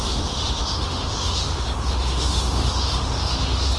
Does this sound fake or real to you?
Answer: fake